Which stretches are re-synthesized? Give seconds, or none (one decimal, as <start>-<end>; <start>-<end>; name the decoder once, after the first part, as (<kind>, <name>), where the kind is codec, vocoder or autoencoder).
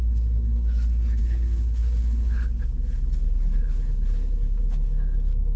1.2-4.6 (codec, HILCodec)